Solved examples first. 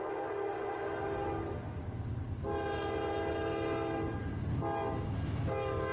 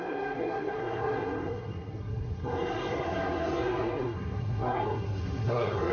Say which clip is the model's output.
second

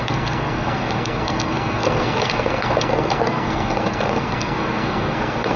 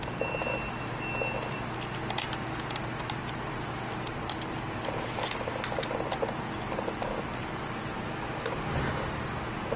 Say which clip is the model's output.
first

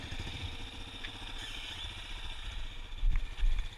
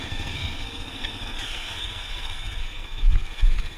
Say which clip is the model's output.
second